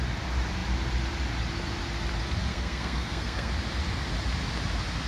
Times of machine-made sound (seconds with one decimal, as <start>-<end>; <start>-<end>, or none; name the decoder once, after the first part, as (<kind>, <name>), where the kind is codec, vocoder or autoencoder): 2.5-3.5 (codec, SNAC)